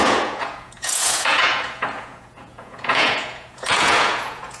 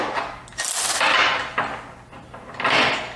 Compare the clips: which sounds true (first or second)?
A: second